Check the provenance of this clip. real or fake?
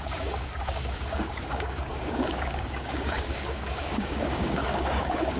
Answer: fake